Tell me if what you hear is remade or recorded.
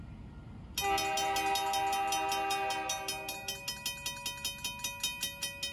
recorded